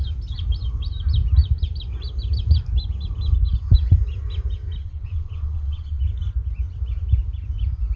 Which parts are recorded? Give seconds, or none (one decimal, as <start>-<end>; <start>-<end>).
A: 0.0-4.8; 6.0-8.0